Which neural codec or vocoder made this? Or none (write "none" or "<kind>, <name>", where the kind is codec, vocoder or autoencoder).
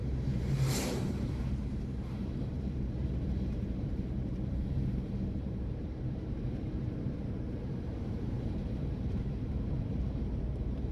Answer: vocoder, BigVGAN v2